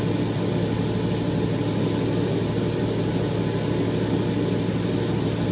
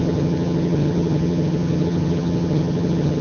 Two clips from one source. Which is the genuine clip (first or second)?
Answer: first